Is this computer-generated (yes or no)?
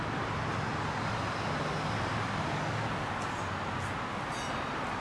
no